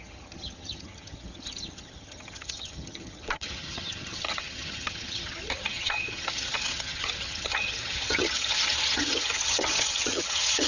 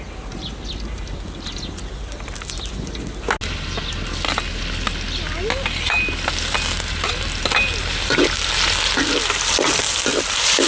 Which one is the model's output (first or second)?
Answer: first